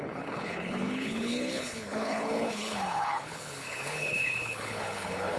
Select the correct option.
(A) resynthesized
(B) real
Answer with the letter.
A